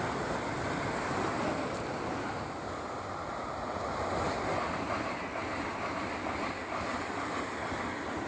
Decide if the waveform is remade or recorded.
recorded